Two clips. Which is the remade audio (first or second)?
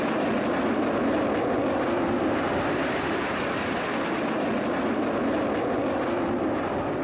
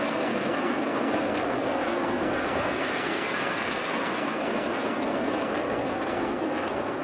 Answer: second